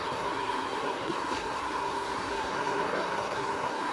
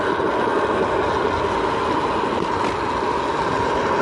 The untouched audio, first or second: second